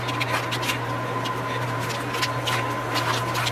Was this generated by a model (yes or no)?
no